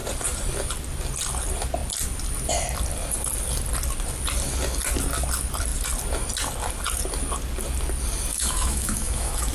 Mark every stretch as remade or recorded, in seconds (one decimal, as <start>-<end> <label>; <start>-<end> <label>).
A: 0.0-8.3 recorded; 8.3-9.5 remade